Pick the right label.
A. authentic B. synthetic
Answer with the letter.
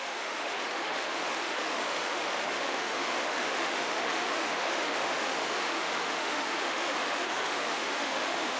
B